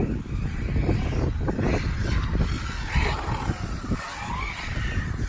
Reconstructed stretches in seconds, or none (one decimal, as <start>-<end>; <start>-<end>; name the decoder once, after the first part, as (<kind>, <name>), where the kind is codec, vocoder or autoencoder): none